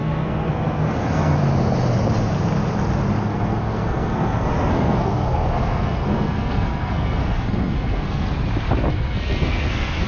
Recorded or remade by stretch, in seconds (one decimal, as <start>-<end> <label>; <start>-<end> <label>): 0.0-1.4 remade; 1.4-3.2 recorded; 3.2-8.3 remade; 8.3-8.9 recorded; 8.9-10.1 remade